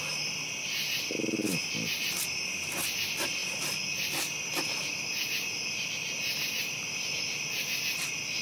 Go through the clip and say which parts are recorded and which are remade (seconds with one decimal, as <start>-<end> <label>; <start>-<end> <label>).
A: 0.0-8.4 recorded